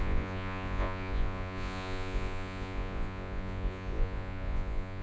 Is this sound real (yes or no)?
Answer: no